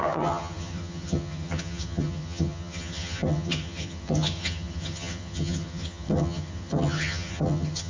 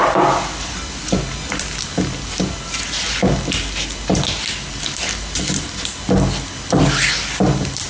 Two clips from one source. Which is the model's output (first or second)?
first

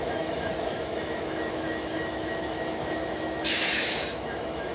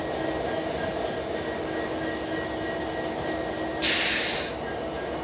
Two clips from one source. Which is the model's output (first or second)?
first